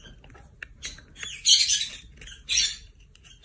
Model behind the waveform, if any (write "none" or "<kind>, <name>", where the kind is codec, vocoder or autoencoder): none